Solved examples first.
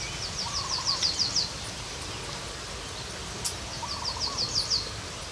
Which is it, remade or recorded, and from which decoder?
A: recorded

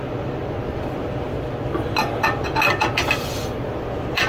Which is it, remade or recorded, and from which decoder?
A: recorded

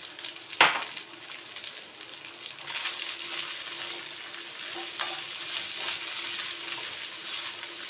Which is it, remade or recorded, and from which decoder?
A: recorded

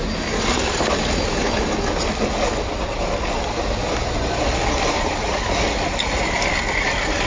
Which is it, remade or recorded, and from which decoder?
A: recorded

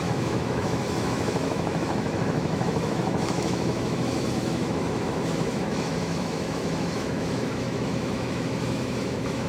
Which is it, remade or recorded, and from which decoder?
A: remade, autoencoder, DAC-VAE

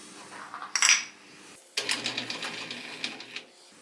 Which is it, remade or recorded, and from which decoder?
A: recorded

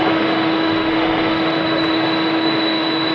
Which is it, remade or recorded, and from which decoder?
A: remade, autoencoder, DAC-VAE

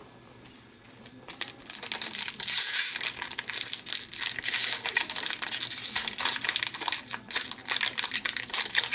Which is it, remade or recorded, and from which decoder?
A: recorded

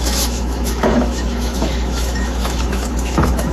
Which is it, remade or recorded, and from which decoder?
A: remade, autoencoder, DAC-VAE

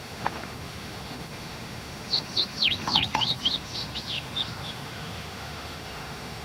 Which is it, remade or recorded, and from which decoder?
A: remade, autoencoder, DAC-VAE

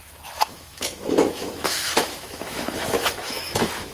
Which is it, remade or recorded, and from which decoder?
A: remade, autoencoder, DAC-VAE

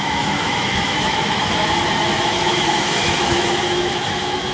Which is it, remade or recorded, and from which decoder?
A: remade, autoencoder, DAC-VAE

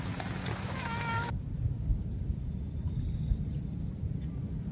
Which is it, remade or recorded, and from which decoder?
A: recorded